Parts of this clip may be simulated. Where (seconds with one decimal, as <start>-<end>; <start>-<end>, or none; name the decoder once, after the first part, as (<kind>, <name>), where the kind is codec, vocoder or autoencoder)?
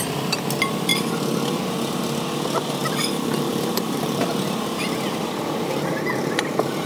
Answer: 0.9-1.6 (vocoder, BigVGAN v2); 2.8-5.4